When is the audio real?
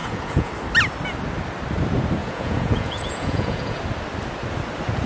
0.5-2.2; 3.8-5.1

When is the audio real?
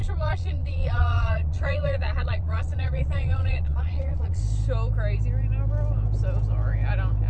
4.4-7.3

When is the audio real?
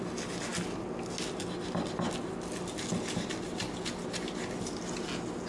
0.0-5.5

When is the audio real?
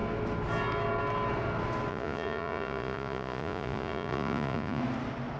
0.0-1.9; 4.8-5.4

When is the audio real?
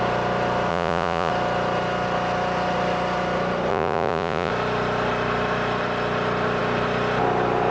0.0-0.7; 1.3-3.7; 4.5-7.7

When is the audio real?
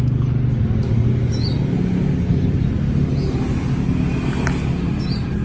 0.0-5.4